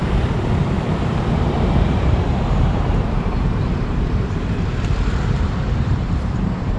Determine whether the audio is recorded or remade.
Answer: remade